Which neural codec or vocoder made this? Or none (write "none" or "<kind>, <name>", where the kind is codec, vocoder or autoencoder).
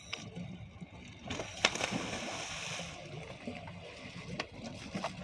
none